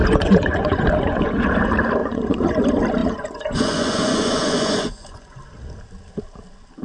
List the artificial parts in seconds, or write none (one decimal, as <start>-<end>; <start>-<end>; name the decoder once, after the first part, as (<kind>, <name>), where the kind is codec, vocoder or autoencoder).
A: 0.0-1.5 (vocoder, Vocos); 2.0-2.6; 3.0-5.4

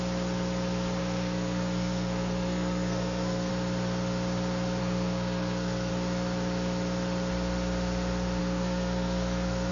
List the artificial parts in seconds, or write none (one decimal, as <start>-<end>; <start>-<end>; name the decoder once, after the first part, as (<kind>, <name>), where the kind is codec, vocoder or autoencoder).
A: 1.0-3.5 (codec, SNAC); 4.8-5.9; 8.4-9.7

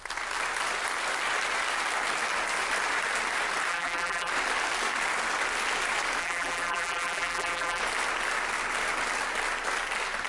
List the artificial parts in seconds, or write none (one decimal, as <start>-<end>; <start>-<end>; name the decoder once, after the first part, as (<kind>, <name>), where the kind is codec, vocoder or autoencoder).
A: 3.7-4.3 (vocoder, BigVGAN v2); 6.2-7.8

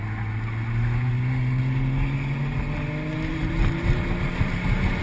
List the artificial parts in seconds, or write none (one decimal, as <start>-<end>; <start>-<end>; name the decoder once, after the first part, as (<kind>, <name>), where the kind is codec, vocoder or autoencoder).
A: 3.3-5.0 (vocoder, BigVGAN v2)

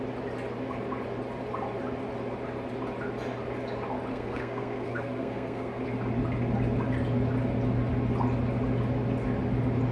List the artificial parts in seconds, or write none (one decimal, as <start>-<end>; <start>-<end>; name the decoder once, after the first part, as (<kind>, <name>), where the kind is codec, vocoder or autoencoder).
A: 4.1-5.8 (codec, SNAC)

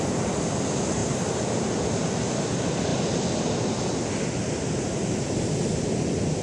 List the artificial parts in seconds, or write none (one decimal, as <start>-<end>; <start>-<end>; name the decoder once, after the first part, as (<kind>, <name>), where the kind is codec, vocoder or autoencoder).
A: none